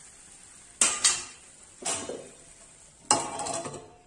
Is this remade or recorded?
recorded